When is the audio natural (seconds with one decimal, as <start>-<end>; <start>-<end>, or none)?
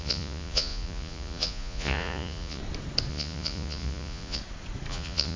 2.6-3.1; 4.4-4.9